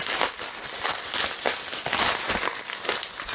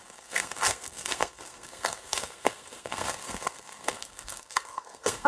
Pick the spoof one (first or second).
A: second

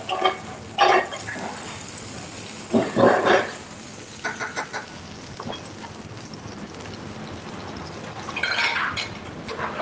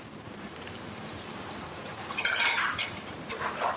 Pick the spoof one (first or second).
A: second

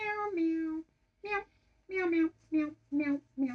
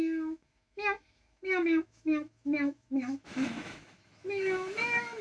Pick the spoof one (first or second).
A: second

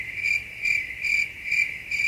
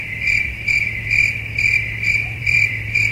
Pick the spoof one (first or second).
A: second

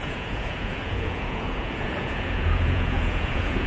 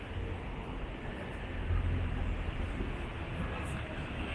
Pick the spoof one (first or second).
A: first